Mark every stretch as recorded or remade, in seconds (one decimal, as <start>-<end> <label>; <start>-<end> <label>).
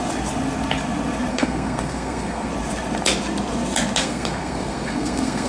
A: 0.0-1.3 recorded; 1.3-2.5 remade; 2.5-4.0 recorded; 4.0-5.5 remade